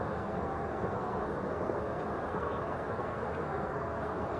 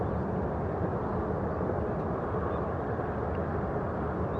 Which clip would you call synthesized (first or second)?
first